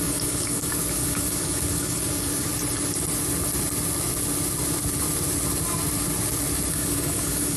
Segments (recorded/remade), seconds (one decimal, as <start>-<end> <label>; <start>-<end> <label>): 0.0-2.5 remade; 2.5-6.7 recorded; 6.7-7.6 remade